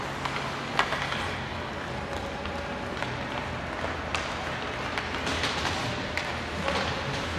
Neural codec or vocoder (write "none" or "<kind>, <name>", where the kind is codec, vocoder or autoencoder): none